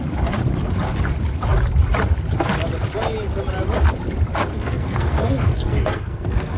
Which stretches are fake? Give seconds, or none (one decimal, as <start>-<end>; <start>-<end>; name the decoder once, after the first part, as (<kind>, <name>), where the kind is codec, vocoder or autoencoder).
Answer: 4.5-6.6 (codec, SNAC)